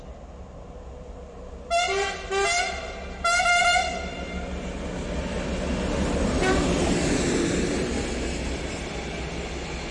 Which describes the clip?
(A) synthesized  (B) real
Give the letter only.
B